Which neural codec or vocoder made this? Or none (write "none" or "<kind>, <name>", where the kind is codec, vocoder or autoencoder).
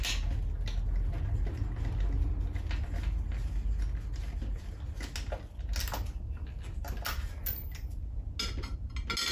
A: none